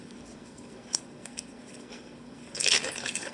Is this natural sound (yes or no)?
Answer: no